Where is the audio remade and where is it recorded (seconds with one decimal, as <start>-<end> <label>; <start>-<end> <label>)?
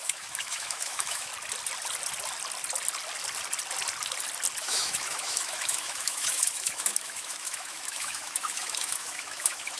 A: 0.0-1.3 remade; 1.3-4.6 recorded; 4.6-9.8 remade